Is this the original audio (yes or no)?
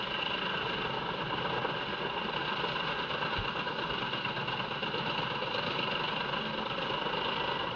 yes